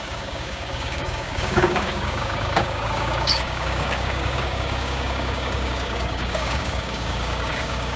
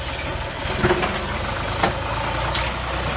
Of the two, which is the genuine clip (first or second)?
second